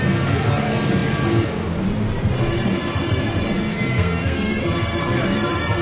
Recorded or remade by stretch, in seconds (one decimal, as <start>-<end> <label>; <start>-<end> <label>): 0.0-3.7 recorded; 3.7-4.5 remade; 4.5-5.8 recorded

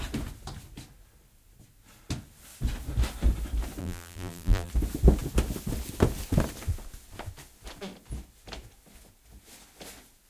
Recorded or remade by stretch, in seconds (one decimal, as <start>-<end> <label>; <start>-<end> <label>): 0.0-3.8 recorded; 3.8-4.7 remade; 4.7-10.3 recorded

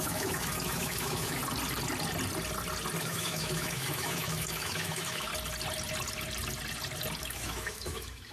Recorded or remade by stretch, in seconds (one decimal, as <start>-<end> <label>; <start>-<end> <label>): 0.0-1.4 remade; 1.4-3.0 recorded; 3.0-5.3 remade; 5.3-7.2 recorded; 7.2-8.3 remade